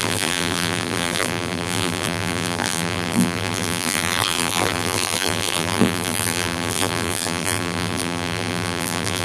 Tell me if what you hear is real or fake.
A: fake